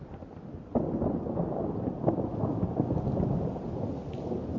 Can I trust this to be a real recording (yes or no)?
yes